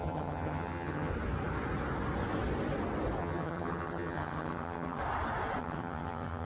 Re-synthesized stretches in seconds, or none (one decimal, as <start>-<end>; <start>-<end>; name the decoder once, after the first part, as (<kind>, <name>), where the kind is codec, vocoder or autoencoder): 0.0-1.1 (vocoder, HiFi-GAN); 3.2-5.0; 5.6-6.4